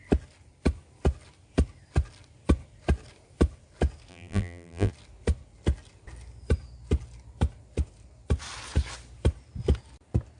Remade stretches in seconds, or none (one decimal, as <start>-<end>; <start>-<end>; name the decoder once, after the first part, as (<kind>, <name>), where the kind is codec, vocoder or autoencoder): 4.1-4.9 (vocoder, BigVGAN v2)